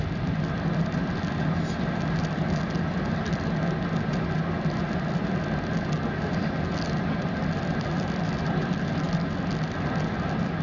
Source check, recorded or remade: recorded